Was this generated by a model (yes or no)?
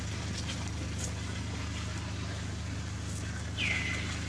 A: no